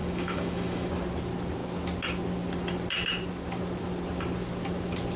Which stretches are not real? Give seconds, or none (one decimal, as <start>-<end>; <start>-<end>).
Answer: 0.0-0.9